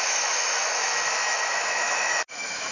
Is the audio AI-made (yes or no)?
yes